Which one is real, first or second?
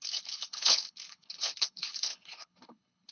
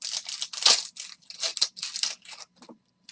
second